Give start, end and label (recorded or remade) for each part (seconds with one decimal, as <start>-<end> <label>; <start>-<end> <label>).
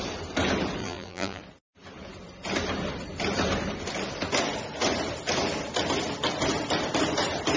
0.0-0.8 recorded; 0.8-1.4 remade; 1.4-7.6 recorded